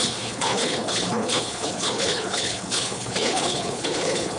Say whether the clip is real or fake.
fake